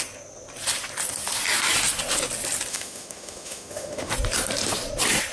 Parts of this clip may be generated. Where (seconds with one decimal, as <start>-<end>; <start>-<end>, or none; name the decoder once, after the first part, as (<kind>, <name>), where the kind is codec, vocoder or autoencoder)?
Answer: 2.7-4.1 (autoencoder, DAC-VAE)